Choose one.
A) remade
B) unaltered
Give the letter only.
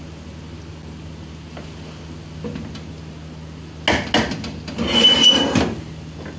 B